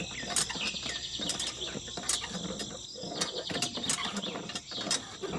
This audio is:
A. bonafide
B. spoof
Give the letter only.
A